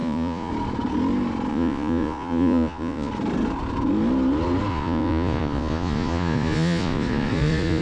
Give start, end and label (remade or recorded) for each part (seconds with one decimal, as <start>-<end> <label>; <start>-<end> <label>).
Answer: 0.0-0.5 remade; 0.5-1.5 recorded; 1.5-3.1 remade; 3.1-4.7 recorded; 4.7-7.8 remade